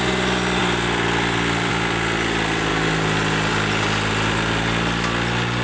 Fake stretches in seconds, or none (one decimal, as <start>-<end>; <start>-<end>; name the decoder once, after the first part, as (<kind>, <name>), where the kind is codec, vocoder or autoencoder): none